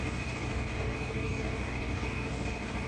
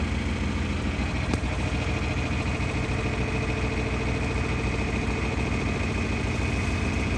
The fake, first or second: first